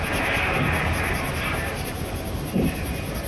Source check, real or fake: real